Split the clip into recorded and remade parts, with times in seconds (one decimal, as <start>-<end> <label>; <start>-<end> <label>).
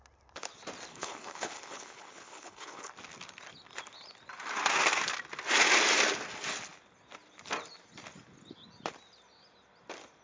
0.0-0.9 recorded; 0.9-2.9 remade; 2.9-10.2 recorded